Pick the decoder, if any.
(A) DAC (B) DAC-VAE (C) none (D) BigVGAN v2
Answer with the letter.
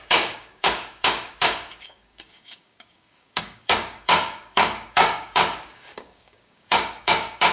A